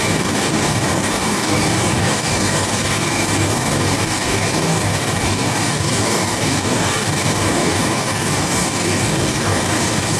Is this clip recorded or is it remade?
remade